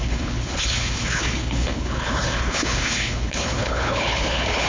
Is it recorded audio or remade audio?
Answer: remade